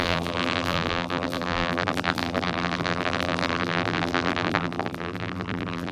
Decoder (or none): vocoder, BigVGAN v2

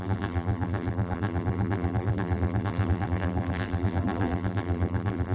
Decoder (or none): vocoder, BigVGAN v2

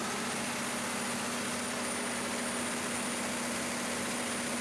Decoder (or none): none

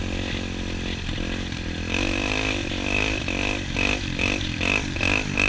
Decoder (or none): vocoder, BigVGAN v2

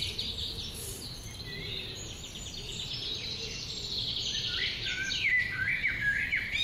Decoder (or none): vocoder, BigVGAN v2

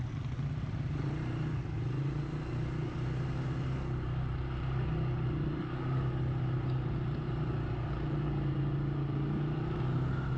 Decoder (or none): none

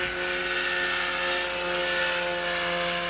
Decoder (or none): none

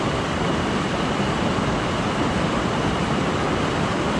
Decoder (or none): none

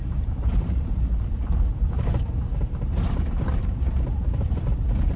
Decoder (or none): vocoder, BigVGAN v2